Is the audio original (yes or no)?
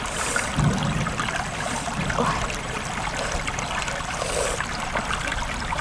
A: yes